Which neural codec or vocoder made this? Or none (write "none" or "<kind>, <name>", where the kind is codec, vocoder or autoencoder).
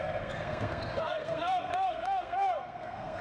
codec, SNAC